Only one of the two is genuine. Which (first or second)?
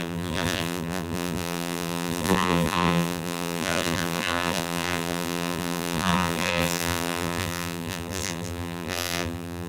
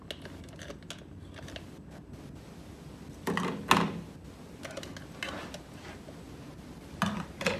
second